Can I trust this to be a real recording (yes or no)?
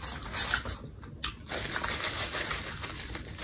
yes